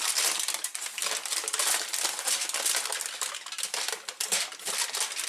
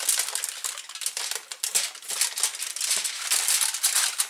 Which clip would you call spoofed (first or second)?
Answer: first